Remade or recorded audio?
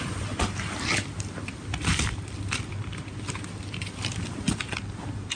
recorded